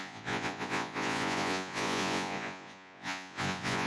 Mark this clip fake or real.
fake